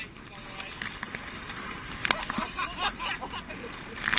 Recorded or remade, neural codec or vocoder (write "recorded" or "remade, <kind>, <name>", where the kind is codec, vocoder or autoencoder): recorded